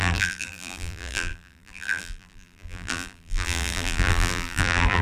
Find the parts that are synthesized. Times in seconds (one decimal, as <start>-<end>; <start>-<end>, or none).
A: 0.0-5.0